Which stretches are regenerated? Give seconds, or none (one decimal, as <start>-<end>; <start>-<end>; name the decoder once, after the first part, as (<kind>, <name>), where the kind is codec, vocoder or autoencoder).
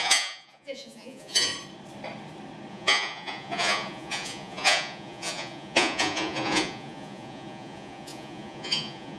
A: 0.0-1.5 (vocoder, Vocos); 2.7-9.2